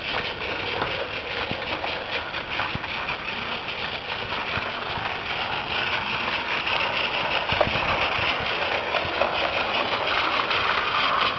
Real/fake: real